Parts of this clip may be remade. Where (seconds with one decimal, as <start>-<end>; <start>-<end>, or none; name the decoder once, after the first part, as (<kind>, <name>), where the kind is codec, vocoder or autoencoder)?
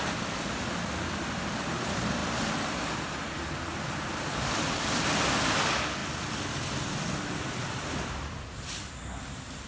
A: none